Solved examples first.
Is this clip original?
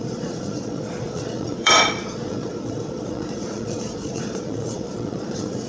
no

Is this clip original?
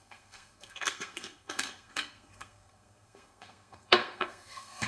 no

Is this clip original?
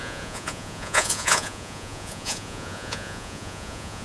no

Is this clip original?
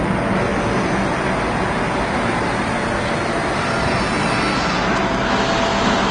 yes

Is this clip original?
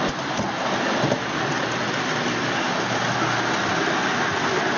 yes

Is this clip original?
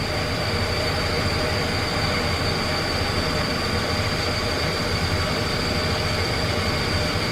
no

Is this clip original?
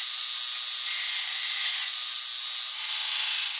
yes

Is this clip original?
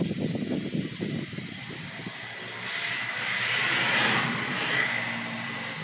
yes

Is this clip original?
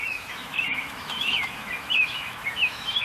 no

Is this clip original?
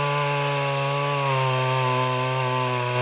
yes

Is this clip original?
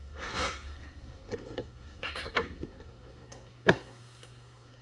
no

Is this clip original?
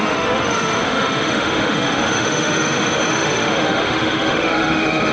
no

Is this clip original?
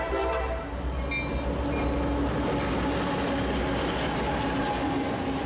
yes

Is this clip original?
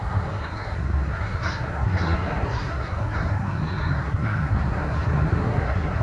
no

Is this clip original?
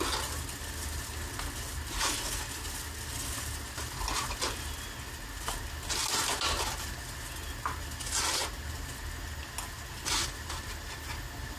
yes